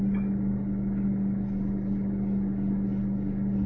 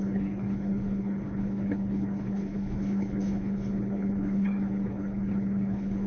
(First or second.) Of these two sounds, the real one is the first